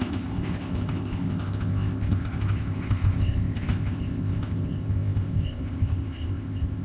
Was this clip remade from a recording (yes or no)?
yes